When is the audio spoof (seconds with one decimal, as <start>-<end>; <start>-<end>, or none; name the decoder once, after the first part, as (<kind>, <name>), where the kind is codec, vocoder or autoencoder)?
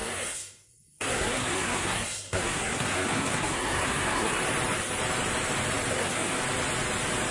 0.0-4.4 (codec, SNAC); 5.9-6.4